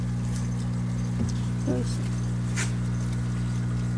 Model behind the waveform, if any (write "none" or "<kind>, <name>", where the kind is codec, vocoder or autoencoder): none